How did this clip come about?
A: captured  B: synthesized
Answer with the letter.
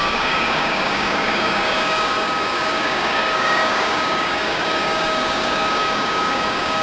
B